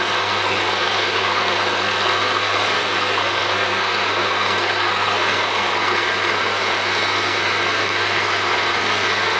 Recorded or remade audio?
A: remade